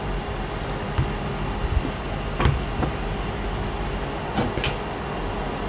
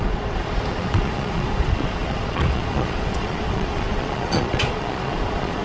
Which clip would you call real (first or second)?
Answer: first